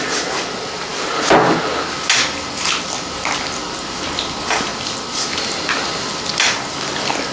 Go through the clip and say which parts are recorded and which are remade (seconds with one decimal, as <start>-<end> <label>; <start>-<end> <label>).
0.0-7.3 recorded